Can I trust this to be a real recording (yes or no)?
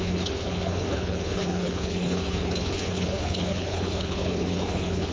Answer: no